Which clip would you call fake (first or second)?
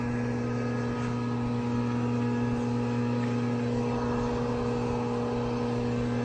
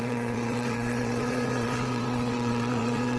second